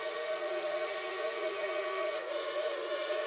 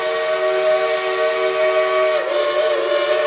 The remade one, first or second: first